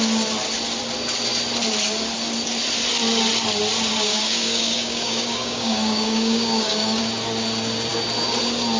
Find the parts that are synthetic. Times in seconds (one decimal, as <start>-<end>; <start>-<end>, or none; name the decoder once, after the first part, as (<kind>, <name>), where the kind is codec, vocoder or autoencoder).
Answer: 3.9-7.0 (codec, DAC)